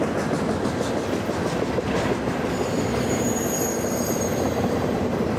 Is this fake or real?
real